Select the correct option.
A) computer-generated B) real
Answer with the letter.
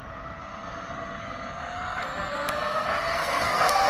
A